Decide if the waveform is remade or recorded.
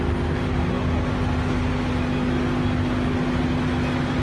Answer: recorded